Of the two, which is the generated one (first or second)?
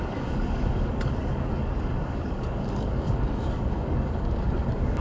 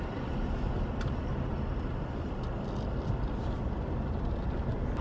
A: first